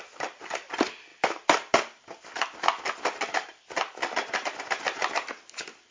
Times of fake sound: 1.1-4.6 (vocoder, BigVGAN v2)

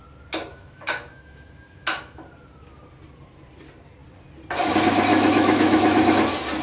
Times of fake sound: 0.5-2.2 (autoencoder, DAC-VAE); 5.1-6.1